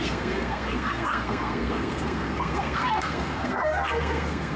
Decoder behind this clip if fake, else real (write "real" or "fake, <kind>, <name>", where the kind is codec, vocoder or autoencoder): fake, codec, SNAC